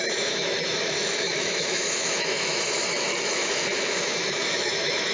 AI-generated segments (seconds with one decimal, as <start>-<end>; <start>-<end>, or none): 0.0-5.1